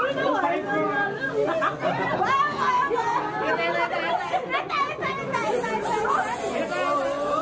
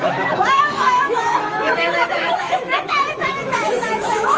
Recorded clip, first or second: first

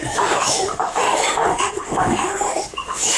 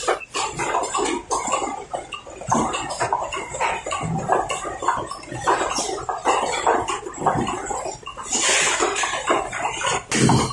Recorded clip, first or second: second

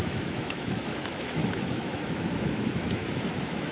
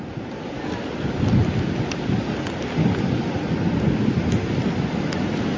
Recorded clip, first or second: second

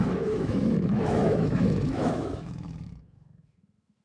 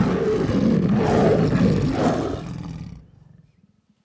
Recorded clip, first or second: second